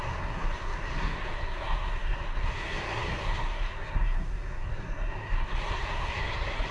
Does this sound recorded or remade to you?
remade